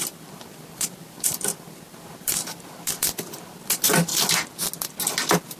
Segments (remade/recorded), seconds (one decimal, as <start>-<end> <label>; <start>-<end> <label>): 0.0-4.1 remade; 4.1-5.6 recorded